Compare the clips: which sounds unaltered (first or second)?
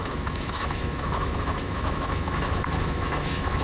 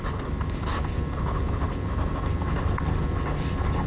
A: second